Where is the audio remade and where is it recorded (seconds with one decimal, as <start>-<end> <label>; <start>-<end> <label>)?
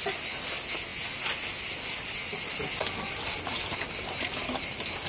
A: 0.0-5.1 recorded